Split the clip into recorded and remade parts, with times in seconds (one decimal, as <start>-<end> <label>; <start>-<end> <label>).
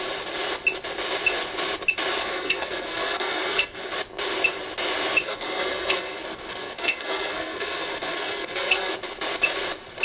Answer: 0.0-2.2 recorded; 2.2-3.9 remade; 3.9-5.2 recorded; 5.2-8.9 remade; 8.9-10.0 recorded